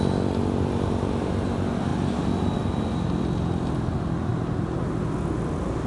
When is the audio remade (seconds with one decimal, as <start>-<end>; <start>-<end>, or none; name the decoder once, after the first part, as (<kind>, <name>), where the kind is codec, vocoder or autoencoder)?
none